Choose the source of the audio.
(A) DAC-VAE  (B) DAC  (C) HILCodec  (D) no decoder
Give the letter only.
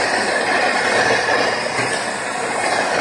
D